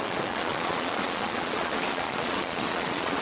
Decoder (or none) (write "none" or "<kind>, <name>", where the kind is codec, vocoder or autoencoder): vocoder, Vocos